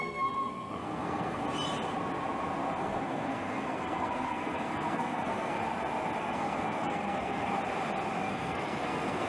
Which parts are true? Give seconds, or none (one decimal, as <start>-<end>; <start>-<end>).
1.4-2.8; 5.6-6.2; 7.5-8.2